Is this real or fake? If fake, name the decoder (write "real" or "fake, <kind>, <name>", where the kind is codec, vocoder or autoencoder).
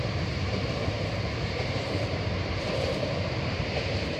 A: fake, vocoder, BigVGAN v2